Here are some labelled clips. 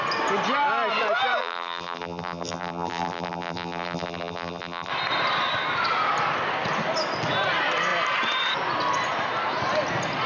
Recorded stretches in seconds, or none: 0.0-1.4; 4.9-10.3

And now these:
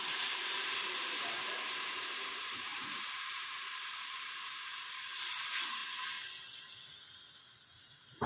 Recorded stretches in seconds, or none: 5.8-7.9

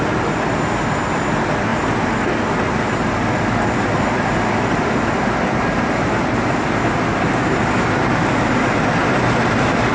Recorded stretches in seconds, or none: 0.0-9.9

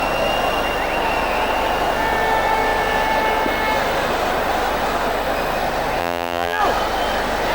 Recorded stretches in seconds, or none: 0.0-6.0; 6.6-7.5

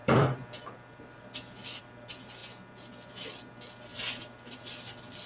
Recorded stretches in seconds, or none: 1.8-3.9

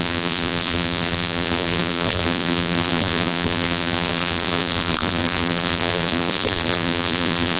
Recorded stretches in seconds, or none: none